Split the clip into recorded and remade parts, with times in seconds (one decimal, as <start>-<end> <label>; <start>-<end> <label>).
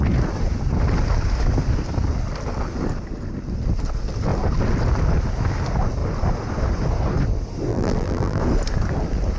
0.0-7.7 recorded; 7.7-8.4 remade; 8.4-9.4 recorded